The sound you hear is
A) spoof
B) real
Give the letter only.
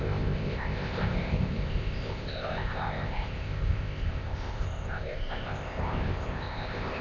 A